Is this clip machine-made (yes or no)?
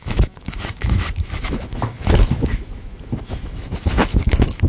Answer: yes